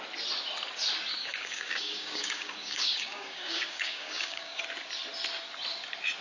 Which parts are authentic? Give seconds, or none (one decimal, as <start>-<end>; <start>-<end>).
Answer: 0.0-1.2; 4.6-6.2